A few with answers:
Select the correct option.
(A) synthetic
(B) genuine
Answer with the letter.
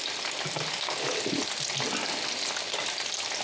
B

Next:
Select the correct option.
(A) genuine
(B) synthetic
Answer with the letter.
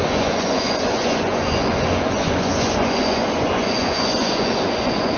B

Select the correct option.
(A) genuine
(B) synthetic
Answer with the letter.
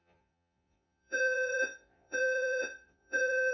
B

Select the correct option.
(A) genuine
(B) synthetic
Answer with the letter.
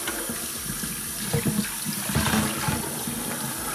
A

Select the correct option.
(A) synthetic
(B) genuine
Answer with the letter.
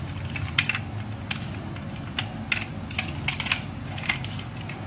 B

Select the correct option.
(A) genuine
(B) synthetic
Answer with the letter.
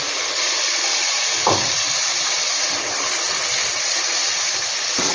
A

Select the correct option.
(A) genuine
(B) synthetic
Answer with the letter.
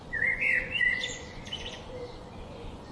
B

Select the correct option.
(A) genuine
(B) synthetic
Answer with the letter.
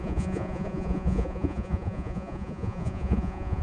B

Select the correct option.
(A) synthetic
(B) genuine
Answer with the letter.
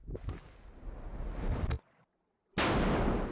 B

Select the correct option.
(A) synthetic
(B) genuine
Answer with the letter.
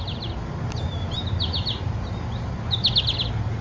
B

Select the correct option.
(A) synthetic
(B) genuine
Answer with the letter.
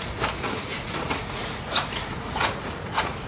A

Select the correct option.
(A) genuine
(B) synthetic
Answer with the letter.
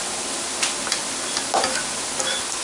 A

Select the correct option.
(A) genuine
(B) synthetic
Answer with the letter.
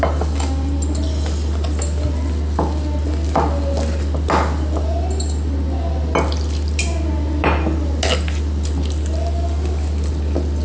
A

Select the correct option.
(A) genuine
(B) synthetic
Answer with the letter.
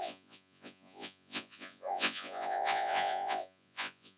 B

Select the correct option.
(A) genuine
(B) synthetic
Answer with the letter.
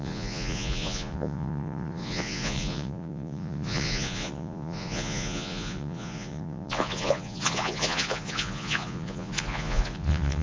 B